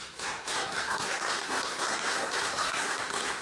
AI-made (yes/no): yes